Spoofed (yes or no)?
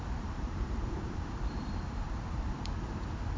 yes